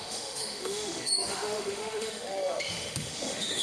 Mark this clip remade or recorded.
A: remade